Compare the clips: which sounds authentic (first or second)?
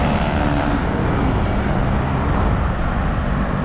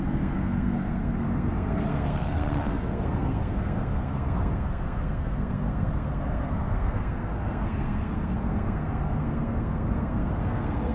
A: first